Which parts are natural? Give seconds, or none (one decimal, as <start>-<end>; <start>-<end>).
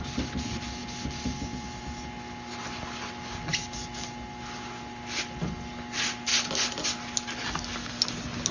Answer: 0.0-8.5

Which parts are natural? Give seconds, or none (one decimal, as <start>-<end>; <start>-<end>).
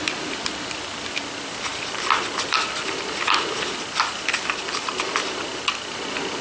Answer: 0.0-6.4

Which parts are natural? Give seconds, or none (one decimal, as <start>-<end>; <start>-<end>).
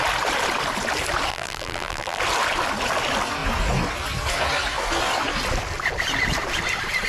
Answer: 0.0-1.3; 2.2-7.1